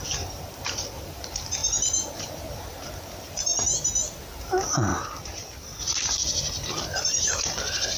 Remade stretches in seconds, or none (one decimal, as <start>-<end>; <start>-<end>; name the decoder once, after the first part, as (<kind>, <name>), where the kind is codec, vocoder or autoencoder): 0.0-1.6 (vocoder, BigVGAN v2); 2.4-3.5; 4.4-8.0